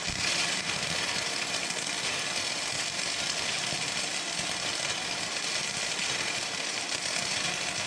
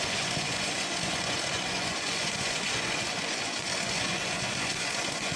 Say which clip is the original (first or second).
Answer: first